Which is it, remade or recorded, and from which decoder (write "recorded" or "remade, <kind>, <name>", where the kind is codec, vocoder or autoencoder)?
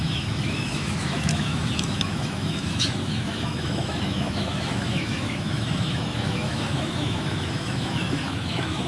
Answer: remade, autoencoder, DAC-VAE